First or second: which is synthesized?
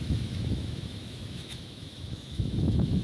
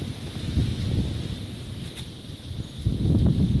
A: first